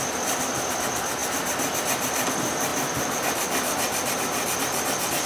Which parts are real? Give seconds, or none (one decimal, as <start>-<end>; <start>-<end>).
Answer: 0.0-5.3